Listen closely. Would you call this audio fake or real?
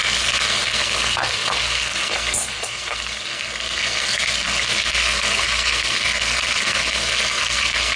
fake